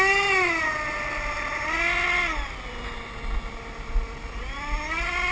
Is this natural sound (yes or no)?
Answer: yes